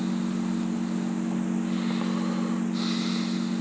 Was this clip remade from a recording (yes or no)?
no